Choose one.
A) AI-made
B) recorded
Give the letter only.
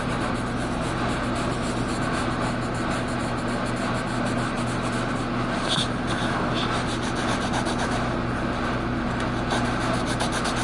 B